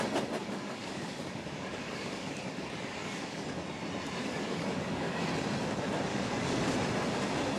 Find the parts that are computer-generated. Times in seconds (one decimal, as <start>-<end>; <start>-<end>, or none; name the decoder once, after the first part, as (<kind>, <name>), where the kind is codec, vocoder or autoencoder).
0.4-3.4 (codec, DAC); 4.2-5.3; 6.1-6.6